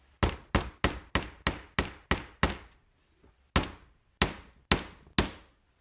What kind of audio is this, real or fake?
real